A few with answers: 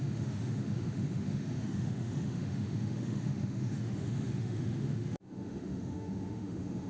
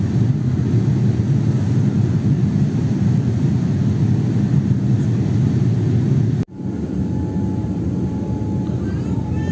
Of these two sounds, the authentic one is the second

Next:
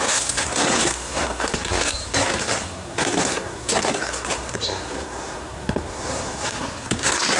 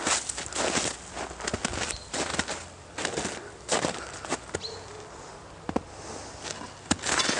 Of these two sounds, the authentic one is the second